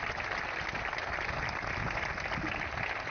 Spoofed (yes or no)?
no